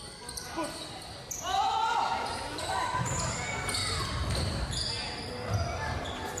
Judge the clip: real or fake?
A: real